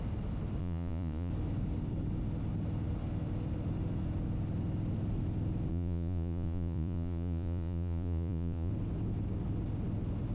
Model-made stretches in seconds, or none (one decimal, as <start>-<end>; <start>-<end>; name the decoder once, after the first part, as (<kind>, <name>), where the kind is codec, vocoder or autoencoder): 0.6-1.3 (vocoder, Vocos); 5.7-8.7